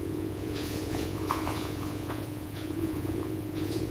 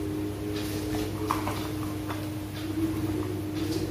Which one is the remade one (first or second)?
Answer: first